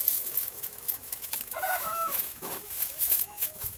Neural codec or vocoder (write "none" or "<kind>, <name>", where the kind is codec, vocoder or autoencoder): autoencoder, DAC-VAE